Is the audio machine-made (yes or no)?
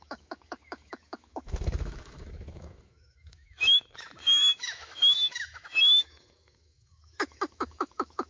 yes